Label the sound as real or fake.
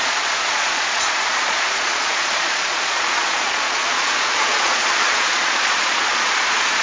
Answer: fake